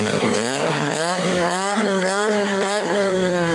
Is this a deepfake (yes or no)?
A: yes